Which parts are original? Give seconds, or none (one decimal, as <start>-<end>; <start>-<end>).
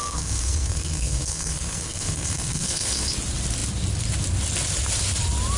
3.1-5.6